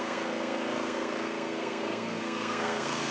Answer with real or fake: fake